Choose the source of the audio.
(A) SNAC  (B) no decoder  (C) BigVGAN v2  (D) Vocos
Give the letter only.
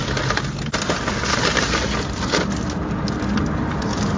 B